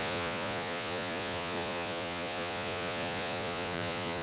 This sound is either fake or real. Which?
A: fake